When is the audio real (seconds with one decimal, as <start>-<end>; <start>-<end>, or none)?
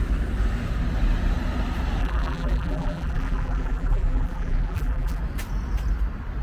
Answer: 0.0-2.0; 5.2-6.4